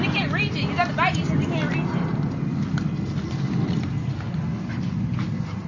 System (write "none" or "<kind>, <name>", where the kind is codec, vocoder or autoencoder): none